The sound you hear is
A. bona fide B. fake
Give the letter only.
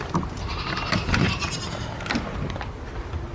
A